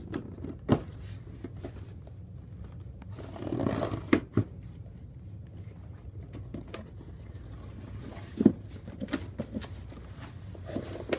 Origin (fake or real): real